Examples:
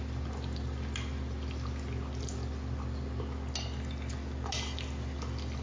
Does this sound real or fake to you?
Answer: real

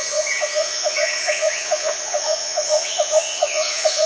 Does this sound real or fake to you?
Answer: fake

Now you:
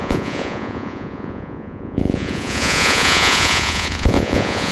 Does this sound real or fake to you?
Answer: fake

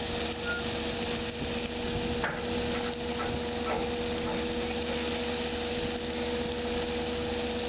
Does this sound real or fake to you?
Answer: real